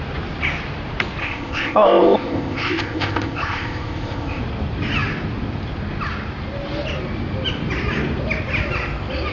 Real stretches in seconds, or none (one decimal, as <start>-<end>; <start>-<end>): 0.0-1.2; 4.4-9.3